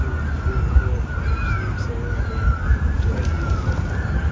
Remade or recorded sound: recorded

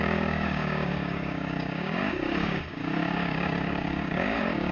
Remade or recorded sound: remade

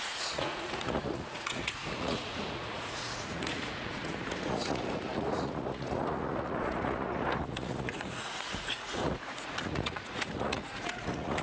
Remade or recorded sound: remade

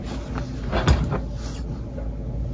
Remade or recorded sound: recorded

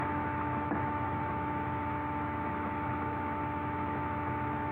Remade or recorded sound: remade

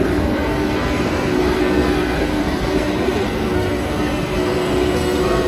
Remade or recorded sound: remade